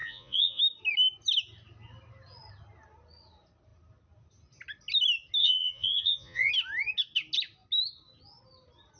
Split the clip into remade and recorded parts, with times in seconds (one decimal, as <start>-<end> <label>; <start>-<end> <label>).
0.0-0.6 remade; 0.6-5.4 recorded; 5.4-6.5 remade; 6.5-9.0 recorded